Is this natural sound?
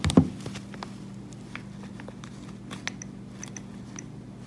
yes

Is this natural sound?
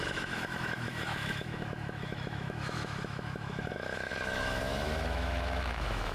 no